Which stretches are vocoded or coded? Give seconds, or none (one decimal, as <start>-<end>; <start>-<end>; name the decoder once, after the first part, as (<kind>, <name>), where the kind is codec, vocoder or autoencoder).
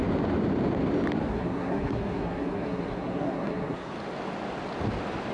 1.3-3.9 (codec, SNAC)